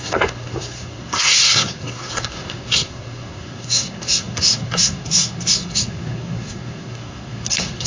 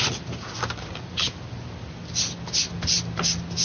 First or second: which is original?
second